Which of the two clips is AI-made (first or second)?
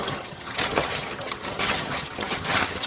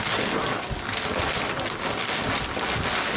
first